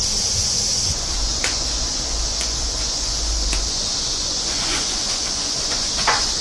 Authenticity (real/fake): fake